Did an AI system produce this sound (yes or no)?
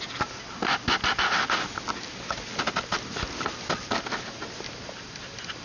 no